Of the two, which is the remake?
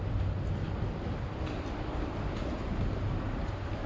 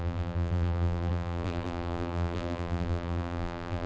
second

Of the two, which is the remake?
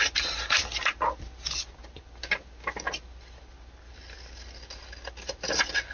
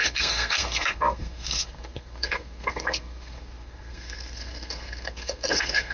second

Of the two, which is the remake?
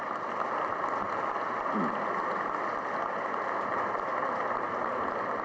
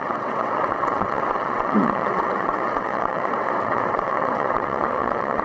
second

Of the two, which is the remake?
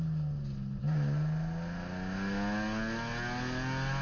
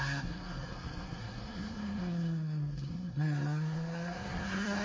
second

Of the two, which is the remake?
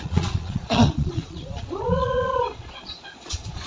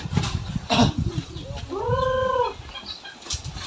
first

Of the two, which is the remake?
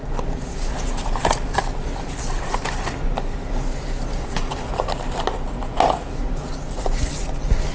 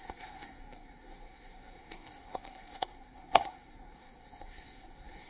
second